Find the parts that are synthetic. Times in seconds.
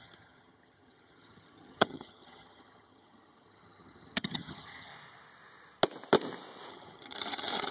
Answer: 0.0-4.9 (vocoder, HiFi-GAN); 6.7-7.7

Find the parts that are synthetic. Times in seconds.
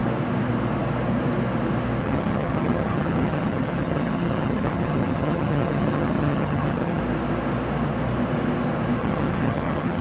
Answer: 2.0-7.0 (vocoder, HiFi-GAN); 9.0-10.0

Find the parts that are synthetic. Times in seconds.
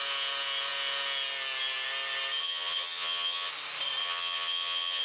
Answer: 2.4-3.5 (vocoder, HiFi-GAN); 4.0-5.0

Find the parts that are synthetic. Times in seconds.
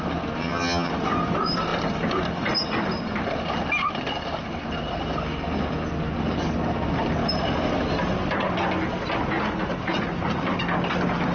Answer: 0.4-0.9 (vocoder, HiFi-GAN)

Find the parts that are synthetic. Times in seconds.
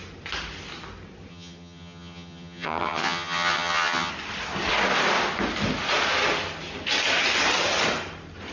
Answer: 1.3-4.1 (vocoder, HiFi-GAN)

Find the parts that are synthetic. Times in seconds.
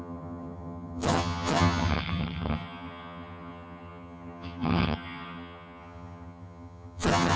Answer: 0.0-7.4 (vocoder, HiFi-GAN)